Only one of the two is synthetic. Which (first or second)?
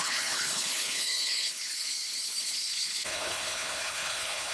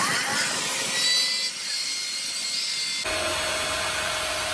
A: first